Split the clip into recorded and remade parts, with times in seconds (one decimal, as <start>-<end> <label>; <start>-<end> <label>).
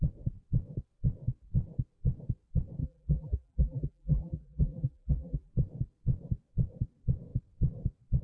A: 0.0-2.8 recorded; 2.8-5.5 remade; 5.5-8.2 recorded